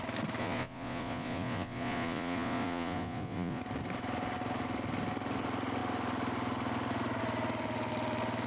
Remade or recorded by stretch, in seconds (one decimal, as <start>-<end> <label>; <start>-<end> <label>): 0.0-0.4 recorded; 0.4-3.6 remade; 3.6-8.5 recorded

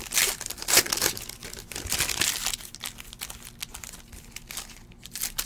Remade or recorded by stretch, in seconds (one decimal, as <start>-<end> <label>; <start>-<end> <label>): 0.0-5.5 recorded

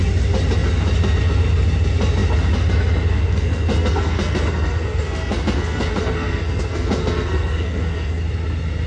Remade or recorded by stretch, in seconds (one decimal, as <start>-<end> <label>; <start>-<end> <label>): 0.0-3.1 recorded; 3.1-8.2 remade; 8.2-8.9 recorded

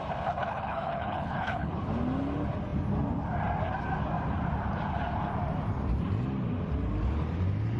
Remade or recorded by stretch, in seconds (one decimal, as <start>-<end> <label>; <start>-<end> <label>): 0.0-0.4 recorded; 0.4-1.9 remade; 1.9-7.8 recorded

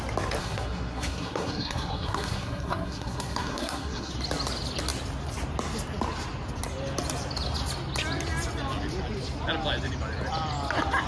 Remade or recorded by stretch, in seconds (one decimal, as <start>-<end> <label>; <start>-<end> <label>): 0.0-0.4 recorded; 0.4-4.1 remade; 4.1-11.1 recorded

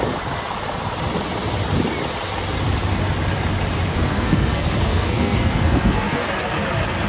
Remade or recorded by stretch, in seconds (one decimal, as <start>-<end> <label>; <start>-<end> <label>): 0.0-3.9 recorded; 3.9-6.3 remade; 6.3-7.1 recorded